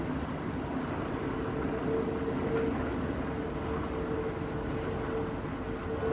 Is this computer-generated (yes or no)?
no